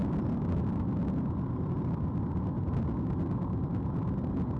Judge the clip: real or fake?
real